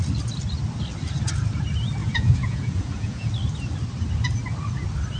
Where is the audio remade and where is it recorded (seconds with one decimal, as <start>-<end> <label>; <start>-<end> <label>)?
0.0-2.0 recorded; 2.0-3.3 remade; 3.3-5.2 recorded